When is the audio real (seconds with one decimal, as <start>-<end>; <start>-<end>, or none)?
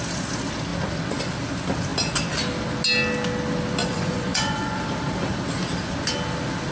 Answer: 0.0-3.8; 4.8-6.7